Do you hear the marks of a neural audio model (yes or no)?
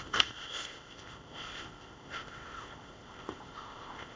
yes